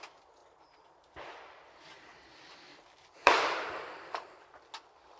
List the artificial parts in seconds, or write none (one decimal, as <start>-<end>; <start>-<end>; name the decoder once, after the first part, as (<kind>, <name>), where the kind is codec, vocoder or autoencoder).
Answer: 0.4-2.3 (vocoder, BigVGAN v2); 2.7-4.4